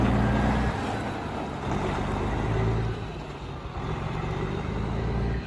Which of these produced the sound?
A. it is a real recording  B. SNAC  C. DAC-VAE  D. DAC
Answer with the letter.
A